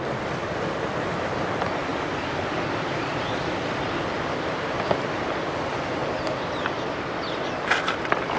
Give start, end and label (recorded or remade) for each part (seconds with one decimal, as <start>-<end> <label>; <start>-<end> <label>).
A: 0.0-8.4 remade